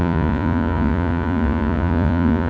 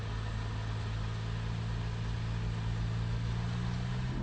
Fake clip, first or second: first